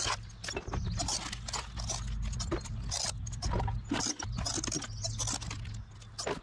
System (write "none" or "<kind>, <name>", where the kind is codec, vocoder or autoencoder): none